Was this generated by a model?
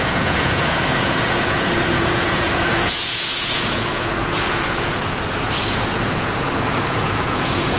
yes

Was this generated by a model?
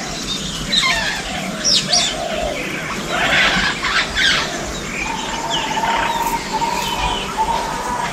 no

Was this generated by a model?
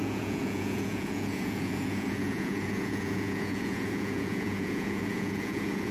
yes